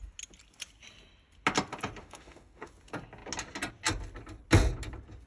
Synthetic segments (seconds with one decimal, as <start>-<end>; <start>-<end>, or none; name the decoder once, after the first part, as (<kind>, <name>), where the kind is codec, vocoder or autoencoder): 2.0-2.7 (autoencoder, DAC-VAE)